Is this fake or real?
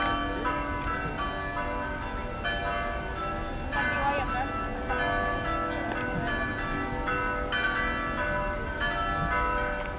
real